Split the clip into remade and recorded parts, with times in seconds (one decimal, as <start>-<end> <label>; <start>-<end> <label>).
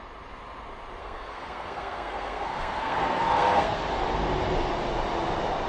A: 0.0-1.0 recorded; 1.0-3.8 remade; 3.8-5.7 recorded